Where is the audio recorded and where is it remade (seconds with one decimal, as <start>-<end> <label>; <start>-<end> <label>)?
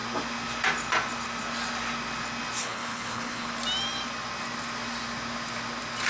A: 0.0-2.6 recorded; 2.6-3.5 remade; 3.5-6.1 recorded